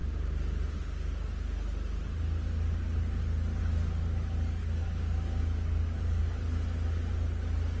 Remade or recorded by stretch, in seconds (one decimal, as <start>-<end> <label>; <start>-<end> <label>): 0.0-3.6 recorded; 3.6-6.2 remade; 6.2-7.8 recorded

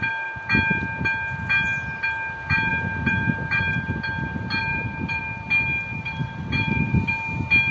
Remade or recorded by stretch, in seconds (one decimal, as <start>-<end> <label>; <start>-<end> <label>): 0.0-2.7 recorded; 2.7-3.6 remade; 3.6-4.7 recorded; 4.7-5.2 remade; 5.2-5.9 recorded; 5.9-7.1 remade; 7.1-7.7 recorded